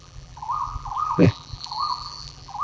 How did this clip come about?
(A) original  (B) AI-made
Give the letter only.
B